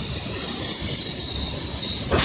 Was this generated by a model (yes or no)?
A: no